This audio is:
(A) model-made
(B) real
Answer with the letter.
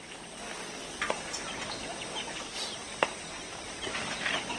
B